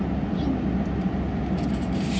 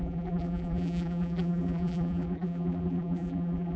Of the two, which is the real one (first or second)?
first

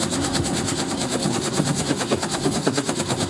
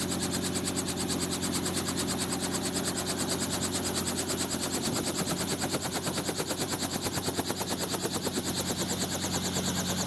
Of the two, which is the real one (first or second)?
second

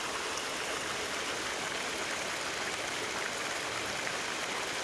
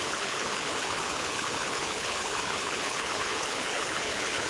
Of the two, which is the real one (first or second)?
first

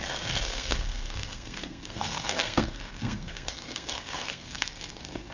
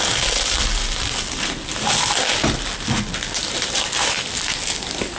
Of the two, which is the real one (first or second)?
second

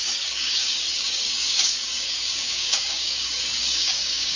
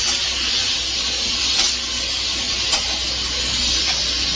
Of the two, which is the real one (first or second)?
second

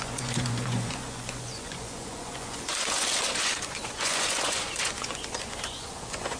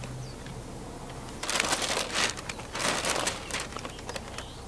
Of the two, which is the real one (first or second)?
second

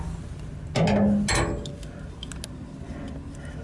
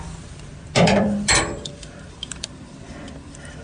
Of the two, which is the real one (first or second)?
first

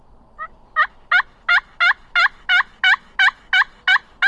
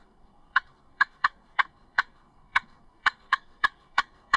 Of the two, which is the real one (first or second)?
first